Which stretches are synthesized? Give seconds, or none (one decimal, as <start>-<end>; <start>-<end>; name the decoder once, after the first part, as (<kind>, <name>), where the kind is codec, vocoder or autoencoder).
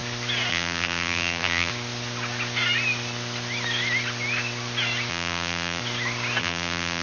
0.5-1.7 (vocoder, BigVGAN v2); 5.1-5.8; 6.4-7.0